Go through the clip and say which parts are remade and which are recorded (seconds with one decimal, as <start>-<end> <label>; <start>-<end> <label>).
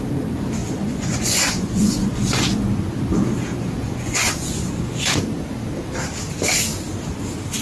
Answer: 0.0-0.6 recorded; 0.6-2.7 remade; 2.7-3.5 recorded; 3.5-5.1 remade; 5.1-7.6 recorded